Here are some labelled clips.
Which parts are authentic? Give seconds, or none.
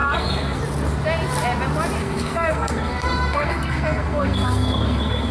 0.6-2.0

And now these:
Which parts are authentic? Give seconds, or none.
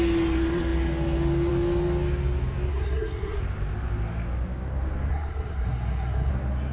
0.0-2.7; 3.4-5.1; 6.3-6.7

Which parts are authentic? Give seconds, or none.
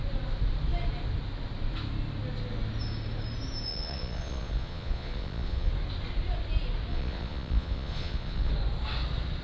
0.0-3.7; 5.7-6.9; 8.5-9.4